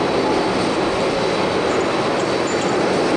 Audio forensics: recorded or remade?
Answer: recorded